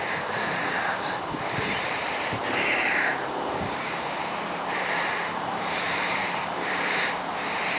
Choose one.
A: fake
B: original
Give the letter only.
A